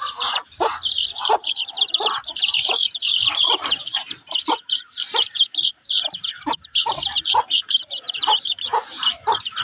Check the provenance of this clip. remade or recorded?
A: remade